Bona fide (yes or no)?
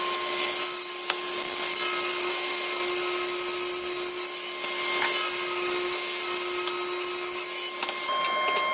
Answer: yes